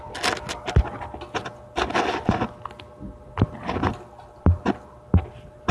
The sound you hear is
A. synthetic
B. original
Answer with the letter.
B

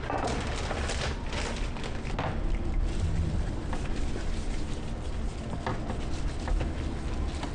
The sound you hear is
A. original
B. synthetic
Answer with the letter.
A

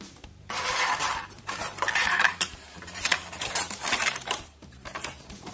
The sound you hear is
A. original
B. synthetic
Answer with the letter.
B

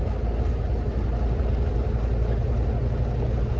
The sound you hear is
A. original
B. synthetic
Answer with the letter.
A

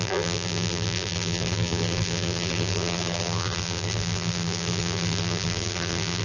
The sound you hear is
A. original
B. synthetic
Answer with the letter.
B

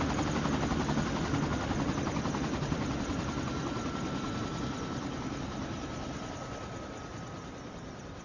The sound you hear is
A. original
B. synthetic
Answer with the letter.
A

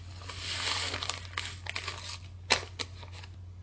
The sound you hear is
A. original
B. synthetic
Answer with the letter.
A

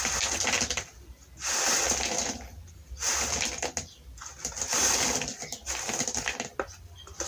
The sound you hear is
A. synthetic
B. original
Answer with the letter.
B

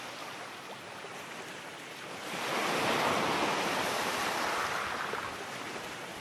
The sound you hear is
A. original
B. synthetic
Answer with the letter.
A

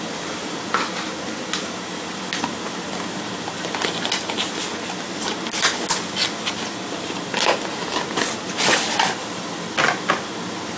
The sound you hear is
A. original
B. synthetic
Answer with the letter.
A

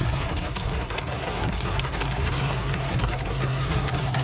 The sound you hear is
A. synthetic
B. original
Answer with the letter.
A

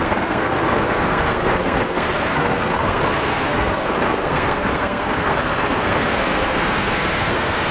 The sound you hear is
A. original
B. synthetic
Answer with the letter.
B